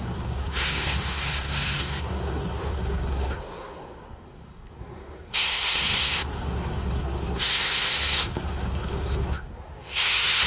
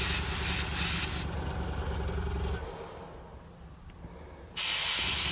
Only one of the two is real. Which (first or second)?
second